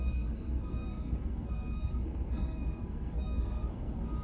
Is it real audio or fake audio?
fake